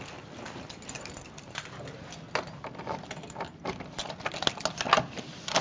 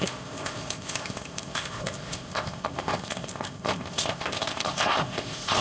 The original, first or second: first